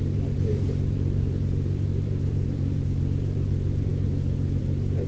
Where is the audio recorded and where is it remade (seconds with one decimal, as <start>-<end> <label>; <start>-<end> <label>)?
0.0-5.1 remade